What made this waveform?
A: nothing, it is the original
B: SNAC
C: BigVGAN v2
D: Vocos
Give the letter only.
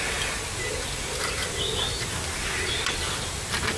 A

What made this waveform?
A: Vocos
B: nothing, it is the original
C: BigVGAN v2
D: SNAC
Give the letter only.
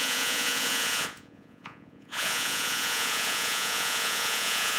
A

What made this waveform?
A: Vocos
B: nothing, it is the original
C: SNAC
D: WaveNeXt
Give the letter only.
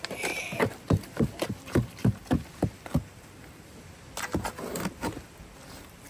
B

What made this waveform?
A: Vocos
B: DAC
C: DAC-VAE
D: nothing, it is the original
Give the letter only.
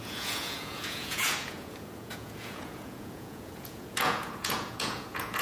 A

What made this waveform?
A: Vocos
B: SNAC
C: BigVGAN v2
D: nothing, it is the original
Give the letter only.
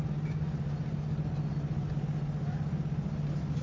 D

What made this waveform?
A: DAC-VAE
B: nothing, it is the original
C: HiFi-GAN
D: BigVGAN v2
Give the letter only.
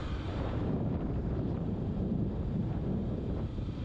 D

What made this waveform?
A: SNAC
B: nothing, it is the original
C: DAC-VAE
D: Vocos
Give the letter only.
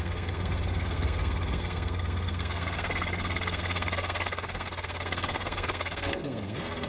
A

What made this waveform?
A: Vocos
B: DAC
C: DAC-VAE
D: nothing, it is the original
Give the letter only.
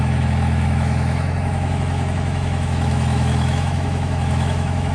C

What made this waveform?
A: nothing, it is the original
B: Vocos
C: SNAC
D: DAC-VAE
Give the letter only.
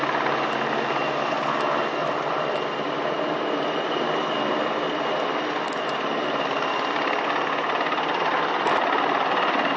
A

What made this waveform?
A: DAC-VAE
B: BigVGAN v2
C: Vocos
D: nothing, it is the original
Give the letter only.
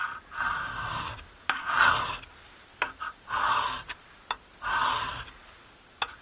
D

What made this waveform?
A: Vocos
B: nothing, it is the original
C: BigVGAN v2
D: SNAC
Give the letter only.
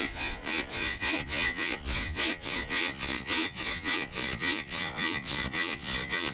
A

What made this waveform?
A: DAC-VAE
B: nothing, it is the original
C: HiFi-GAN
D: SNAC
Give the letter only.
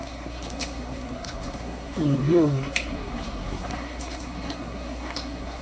D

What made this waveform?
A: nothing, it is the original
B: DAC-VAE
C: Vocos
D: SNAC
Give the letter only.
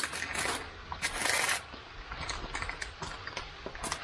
A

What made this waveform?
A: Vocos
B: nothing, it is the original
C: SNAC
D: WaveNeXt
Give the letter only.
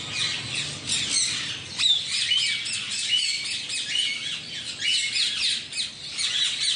B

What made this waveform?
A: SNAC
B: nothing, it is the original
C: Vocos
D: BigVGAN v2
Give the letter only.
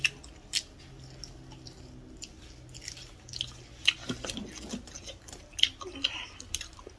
B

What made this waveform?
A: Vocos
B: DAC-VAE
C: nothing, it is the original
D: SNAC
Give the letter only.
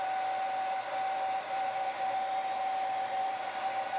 C